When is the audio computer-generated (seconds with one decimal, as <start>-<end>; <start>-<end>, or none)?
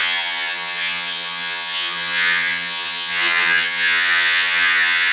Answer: 0.0-5.1